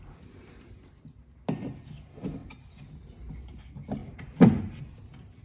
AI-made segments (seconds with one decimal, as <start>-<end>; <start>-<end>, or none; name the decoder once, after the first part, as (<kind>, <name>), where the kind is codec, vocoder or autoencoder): 4.0-4.6 (vocoder, BigVGAN v2)